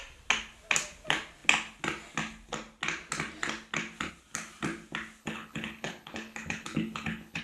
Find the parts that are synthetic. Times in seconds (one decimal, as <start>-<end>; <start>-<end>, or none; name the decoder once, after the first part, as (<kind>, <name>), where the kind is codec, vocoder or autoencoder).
5.2-7.4 (codec, HILCodec)